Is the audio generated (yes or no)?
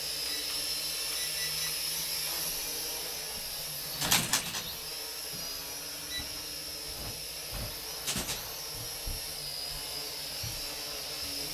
no